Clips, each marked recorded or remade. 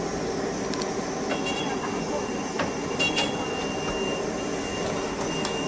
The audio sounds recorded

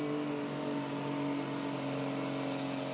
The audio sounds recorded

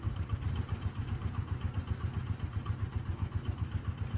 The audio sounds recorded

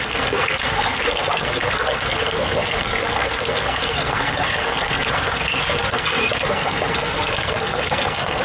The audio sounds remade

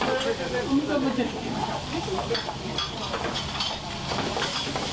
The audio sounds recorded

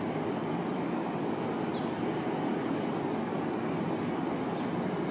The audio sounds recorded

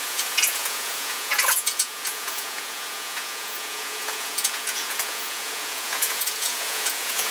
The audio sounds remade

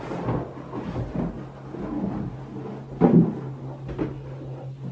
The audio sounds recorded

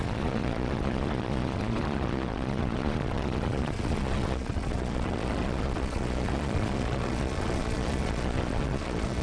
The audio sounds remade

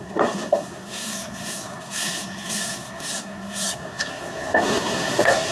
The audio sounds remade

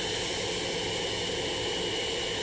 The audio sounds recorded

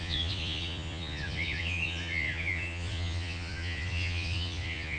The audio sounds remade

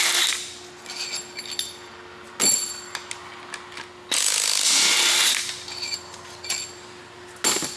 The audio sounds recorded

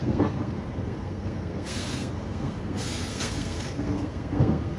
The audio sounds remade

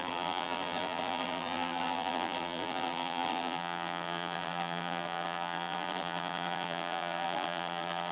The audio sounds remade